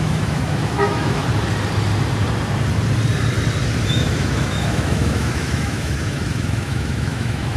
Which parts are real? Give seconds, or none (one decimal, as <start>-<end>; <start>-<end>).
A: 1.2-3.9

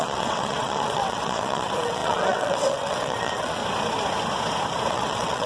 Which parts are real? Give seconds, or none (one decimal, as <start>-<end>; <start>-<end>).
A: 3.6-4.9

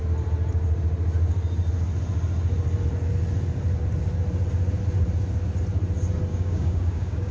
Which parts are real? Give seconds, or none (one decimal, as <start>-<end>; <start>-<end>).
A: 0.0-6.3

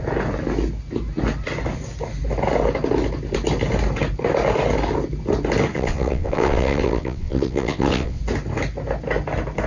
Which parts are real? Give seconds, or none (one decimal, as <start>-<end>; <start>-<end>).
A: 0.0-5.7; 8.2-9.7

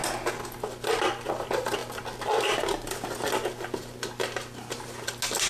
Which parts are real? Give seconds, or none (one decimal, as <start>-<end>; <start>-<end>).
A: 0.0-5.5